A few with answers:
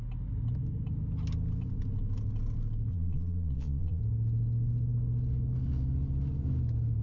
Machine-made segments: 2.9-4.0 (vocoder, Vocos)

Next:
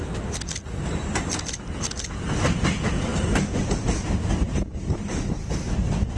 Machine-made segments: none

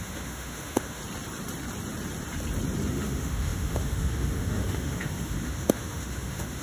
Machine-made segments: 0.0-1.0 (autoencoder, DAC-VAE); 2.9-6.6

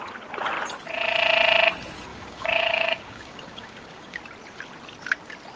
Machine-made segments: 2.1-4.2 (codec, DAC)

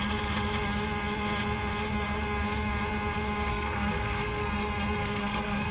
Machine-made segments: 3.5-4.5 (codec, SNAC); 5.0-5.7

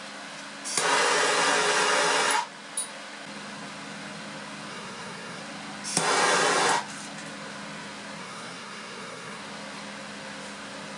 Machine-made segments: 4.7-5.4 (codec, SNAC); 8.2-9.4

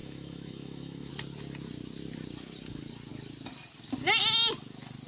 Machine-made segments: 0.0-1.1 (autoencoder, DAC-VAE)